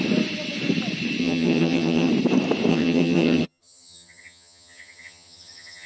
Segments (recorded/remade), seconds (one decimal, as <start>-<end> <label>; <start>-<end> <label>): 0.0-1.2 recorded; 1.2-2.1 remade; 2.1-2.7 recorded; 2.7-5.9 remade